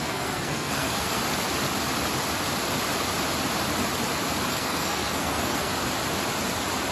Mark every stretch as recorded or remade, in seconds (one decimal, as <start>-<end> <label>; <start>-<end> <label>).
0.0-1.2 remade; 1.2-4.5 recorded; 4.5-5.7 remade; 5.7-6.9 recorded